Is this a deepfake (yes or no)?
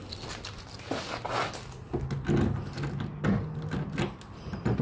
no